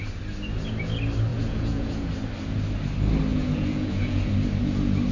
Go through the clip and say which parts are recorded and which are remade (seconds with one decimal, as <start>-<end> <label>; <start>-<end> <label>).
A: 0.0-1.3 recorded; 1.3-2.1 remade; 2.1-3.3 recorded; 3.3-4.3 remade; 4.3-5.1 recorded